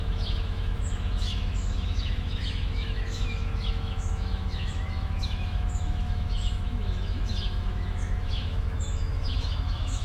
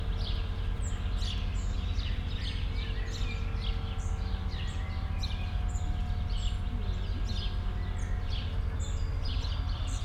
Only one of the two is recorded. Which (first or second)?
second